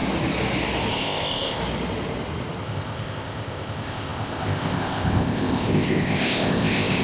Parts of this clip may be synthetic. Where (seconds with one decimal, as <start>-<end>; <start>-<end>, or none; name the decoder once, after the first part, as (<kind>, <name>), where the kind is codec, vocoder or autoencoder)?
0.9-1.6 (codec, ZipCodec); 2.6-7.0